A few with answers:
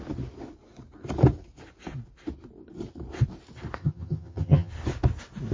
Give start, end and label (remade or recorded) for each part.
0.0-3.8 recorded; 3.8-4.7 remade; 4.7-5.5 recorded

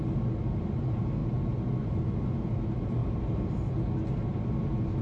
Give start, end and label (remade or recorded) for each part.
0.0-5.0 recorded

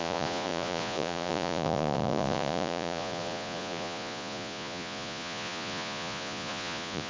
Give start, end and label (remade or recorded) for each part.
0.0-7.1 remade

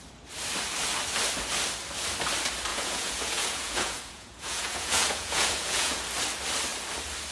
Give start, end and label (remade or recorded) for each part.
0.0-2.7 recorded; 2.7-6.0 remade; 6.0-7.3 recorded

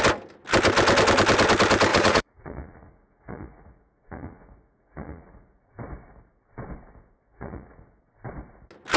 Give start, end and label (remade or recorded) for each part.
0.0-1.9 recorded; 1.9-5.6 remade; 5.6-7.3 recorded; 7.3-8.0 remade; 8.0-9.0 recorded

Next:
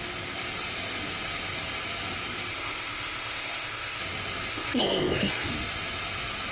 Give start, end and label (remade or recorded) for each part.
0.0-2.5 recorded; 2.5-4.0 remade; 4.0-4.5 recorded; 4.5-5.5 remade; 5.5-6.5 recorded